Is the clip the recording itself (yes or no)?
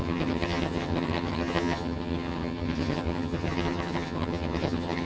no